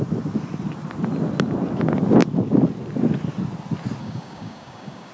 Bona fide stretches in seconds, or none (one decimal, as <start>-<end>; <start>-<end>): 0.0-4.0